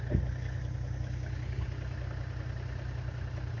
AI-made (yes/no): no